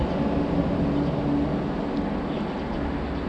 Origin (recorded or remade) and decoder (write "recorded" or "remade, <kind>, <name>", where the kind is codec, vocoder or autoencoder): recorded